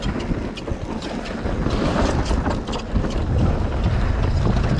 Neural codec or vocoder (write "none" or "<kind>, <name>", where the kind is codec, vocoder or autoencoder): none